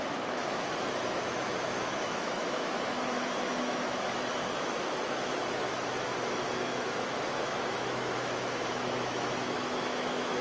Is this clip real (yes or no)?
no